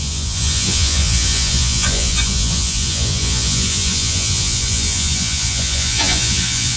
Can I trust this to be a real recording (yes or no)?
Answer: no